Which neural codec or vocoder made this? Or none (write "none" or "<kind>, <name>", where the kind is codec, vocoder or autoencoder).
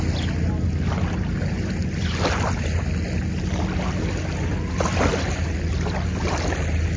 none